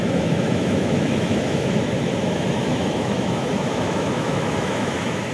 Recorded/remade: remade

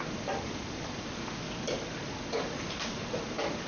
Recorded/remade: recorded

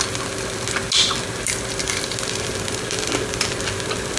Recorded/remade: recorded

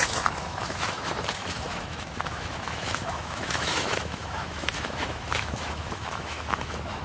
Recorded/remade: remade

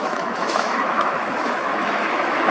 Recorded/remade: remade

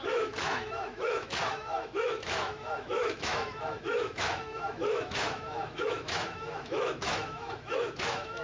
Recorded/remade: remade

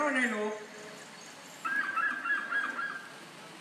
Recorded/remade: recorded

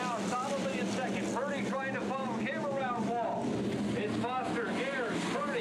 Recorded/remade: recorded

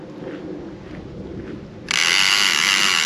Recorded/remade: recorded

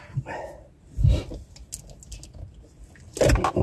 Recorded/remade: recorded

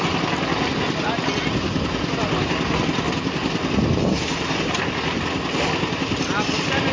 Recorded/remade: recorded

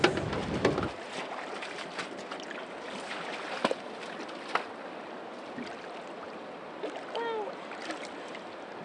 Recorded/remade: recorded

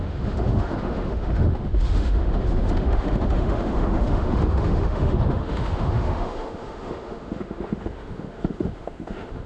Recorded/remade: remade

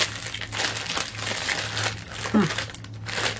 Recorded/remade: recorded